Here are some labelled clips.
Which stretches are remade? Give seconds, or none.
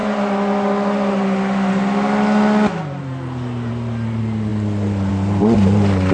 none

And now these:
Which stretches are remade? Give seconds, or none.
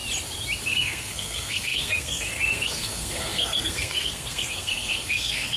0.6-5.6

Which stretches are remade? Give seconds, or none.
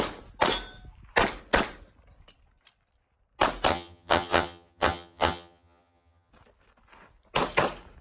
3.7-6.3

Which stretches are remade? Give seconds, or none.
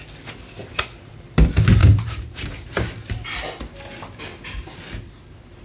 0.6-1.1; 1.8-3.4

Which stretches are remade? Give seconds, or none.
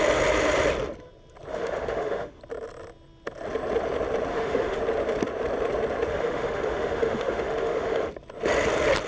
1.5-2.4; 4.3-4.8; 6.1-8.1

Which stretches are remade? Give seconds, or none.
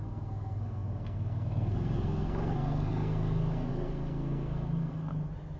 0.0-5.1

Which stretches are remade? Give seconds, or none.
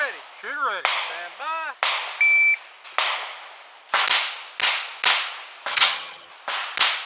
5.7-6.3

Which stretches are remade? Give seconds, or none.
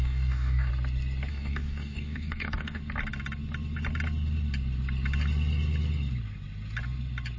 0.0-0.7; 1.3-2.8